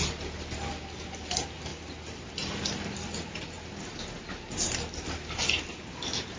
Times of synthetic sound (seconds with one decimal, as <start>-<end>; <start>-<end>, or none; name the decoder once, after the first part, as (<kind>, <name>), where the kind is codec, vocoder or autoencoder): none